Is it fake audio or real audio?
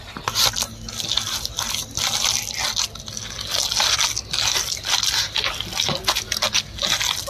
real